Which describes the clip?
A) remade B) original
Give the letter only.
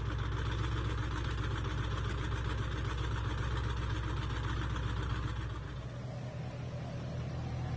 B